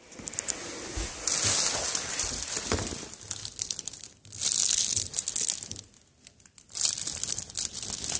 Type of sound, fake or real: real